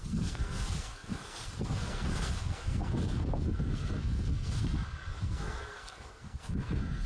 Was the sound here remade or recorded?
remade